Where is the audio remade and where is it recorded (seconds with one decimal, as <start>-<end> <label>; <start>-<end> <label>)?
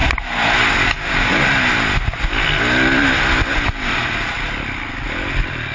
0.0-3.4 recorded; 3.4-5.7 remade